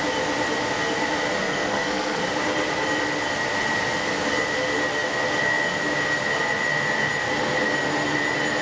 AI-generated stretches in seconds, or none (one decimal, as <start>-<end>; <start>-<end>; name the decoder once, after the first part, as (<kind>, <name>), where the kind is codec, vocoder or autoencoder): 1.4-2.2 (codec, SNAC)